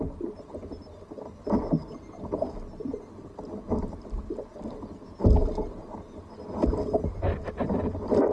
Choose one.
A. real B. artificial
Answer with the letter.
A